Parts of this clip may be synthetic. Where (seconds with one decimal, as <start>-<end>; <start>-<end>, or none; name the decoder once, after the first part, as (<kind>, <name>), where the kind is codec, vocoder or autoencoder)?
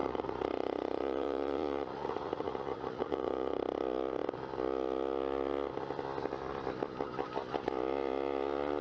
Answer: 0.0-3.6 (vocoder, Vocos)